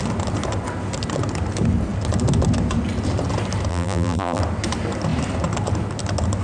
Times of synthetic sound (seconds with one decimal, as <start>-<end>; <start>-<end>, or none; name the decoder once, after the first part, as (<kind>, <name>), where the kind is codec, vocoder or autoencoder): 3.7-4.4 (vocoder, BigVGAN v2)